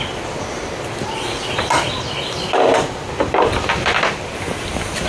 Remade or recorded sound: recorded